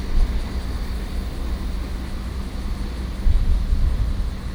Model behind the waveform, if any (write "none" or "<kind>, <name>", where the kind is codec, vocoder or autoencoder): none